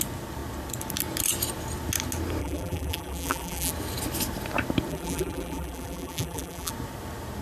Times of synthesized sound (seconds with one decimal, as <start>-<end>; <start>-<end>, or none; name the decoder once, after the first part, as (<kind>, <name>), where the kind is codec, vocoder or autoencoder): 2.4-3.7 (vocoder, BigVGAN v2); 4.9-6.7